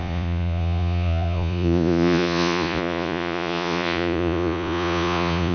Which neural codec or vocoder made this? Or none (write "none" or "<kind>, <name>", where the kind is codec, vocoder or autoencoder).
vocoder, Vocos